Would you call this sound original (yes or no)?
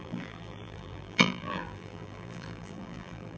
no